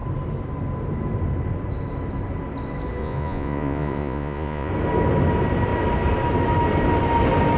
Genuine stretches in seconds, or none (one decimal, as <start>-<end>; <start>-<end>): 0.0-3.0; 4.7-7.6